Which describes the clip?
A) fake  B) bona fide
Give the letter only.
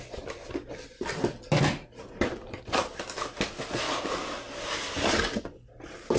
B